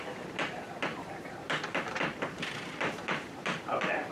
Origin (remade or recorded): remade